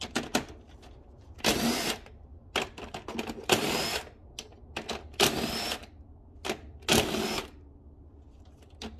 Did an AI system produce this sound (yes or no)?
no